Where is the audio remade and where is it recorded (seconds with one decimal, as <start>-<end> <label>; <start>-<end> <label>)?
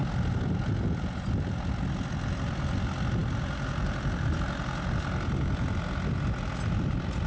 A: 0.0-7.3 recorded